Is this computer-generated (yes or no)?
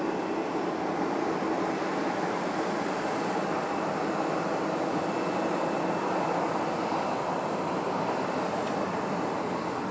no